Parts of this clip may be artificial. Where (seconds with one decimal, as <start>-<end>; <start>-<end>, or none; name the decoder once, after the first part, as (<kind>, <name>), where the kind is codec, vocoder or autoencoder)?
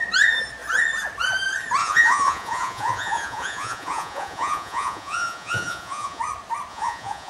1.8-6.2 (vocoder, Vocos); 6.7-7.3